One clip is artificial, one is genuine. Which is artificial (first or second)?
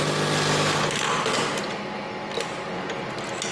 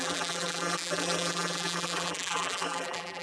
second